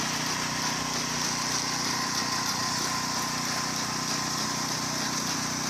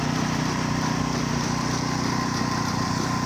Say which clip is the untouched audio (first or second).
first